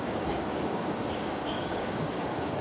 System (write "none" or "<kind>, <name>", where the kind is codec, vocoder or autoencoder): codec, DAC